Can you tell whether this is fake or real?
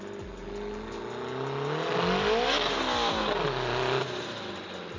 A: real